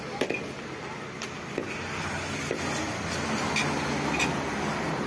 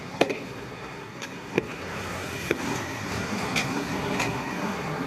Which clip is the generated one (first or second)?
second